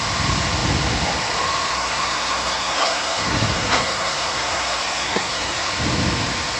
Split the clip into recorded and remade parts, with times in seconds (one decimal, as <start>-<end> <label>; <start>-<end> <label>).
0.0-1.7 recorded; 1.7-5.7 remade; 5.7-6.6 recorded